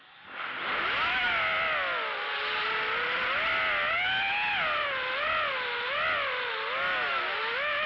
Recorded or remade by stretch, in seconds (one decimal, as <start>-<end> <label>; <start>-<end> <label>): 0.0-7.9 recorded